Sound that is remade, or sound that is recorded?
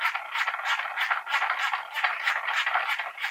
recorded